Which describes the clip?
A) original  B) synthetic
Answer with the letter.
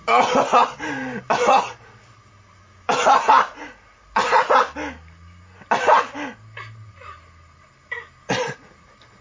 A